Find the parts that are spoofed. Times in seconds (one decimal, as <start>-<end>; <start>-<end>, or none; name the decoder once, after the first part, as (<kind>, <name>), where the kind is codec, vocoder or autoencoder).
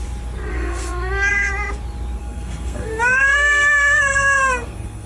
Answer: 0.5-1.5 (codec, SNAC); 2.2-5.1